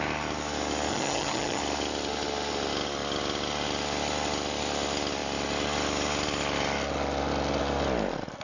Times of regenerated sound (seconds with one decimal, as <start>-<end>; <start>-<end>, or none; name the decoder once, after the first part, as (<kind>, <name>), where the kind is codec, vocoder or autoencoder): 0.9-1.6 (vocoder, HiFi-GAN)